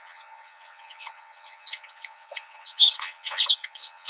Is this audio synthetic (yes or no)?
yes